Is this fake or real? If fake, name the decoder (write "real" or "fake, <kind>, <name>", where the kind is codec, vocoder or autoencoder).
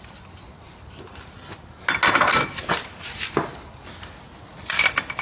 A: real